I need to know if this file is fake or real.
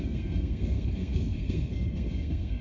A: fake